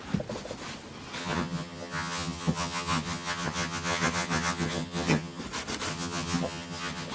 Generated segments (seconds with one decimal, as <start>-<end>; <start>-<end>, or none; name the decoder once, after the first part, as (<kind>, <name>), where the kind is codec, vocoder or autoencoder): 1.2-5.4 (vocoder, HiFi-GAN); 5.9-7.1